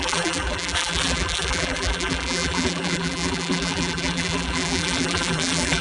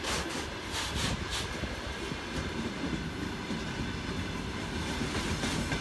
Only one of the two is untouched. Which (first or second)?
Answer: second